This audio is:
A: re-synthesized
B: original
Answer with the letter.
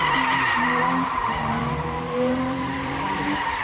A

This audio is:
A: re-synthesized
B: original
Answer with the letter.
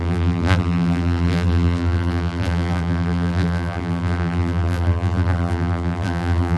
A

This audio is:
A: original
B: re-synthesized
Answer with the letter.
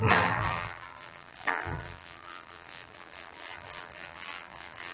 B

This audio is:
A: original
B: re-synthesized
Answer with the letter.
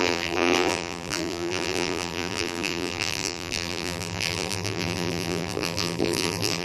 B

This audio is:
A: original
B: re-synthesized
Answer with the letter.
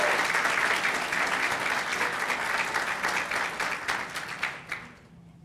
A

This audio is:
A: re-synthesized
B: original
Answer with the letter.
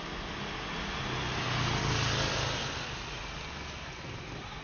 B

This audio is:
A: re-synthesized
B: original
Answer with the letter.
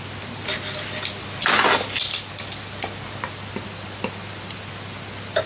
B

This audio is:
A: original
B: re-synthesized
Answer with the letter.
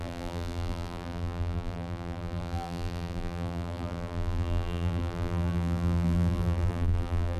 B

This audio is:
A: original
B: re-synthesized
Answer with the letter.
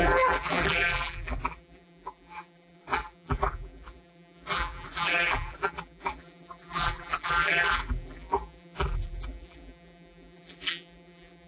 B